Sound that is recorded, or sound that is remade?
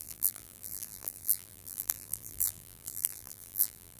remade